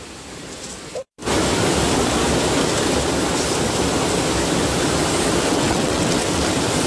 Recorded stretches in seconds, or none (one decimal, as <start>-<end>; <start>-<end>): 0.0-5.5; 6.4-6.9